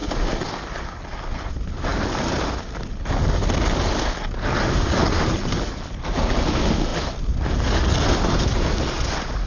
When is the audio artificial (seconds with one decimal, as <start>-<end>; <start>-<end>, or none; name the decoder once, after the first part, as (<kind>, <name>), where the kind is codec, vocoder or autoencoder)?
none